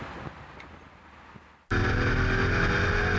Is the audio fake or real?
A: real